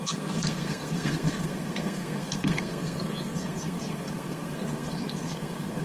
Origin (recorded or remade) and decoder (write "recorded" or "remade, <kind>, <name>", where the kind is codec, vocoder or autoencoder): remade, codec, SNAC